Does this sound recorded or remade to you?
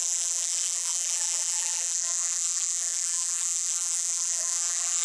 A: remade